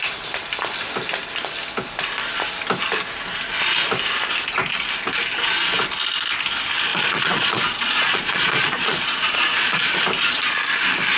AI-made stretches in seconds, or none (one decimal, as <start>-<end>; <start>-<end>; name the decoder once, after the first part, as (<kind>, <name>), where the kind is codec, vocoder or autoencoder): 6.9-9.9 (vocoder, Vocos)